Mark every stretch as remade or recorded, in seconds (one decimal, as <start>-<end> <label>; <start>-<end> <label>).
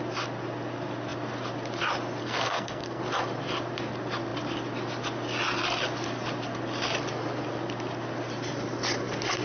0.0-2.2 recorded; 2.2-3.0 remade; 3.0-9.4 recorded